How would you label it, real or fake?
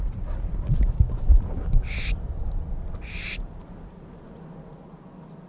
real